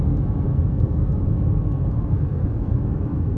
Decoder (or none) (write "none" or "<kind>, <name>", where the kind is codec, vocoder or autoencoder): codec, SNAC